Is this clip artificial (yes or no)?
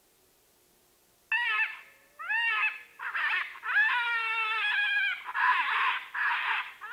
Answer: no